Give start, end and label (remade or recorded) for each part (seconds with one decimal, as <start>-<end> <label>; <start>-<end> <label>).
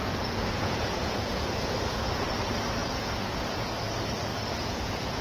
0.0-2.3 remade; 2.3-2.8 recorded; 2.8-3.7 remade; 3.7-4.3 recorded; 4.3-5.2 remade